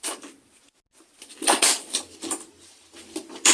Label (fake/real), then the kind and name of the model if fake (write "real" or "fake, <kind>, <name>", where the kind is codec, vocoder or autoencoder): real